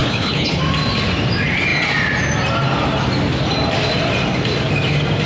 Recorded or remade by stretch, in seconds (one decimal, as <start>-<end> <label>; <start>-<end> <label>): 0.0-0.6 remade; 0.6-5.3 recorded